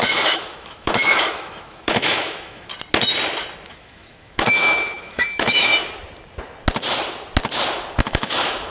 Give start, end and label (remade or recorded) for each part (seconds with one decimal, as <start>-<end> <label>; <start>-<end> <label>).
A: 0.0-2.7 remade; 2.7-3.7 recorded; 3.7-5.7 remade; 5.7-8.0 recorded; 8.0-8.7 remade